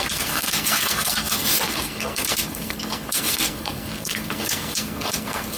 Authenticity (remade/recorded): remade